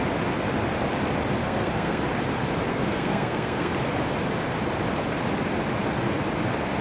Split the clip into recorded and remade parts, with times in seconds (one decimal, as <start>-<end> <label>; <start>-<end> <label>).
0.0-1.4 recorded; 1.4-2.0 remade; 2.0-2.7 recorded; 2.7-3.7 remade; 3.7-6.8 recorded